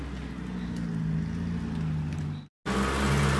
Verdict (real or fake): real